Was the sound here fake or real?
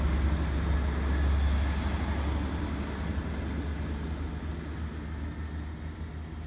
real